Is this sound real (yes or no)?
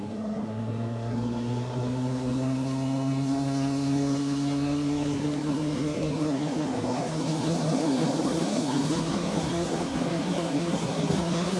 no